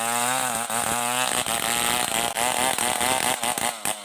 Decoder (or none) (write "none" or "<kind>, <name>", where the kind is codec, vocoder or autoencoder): none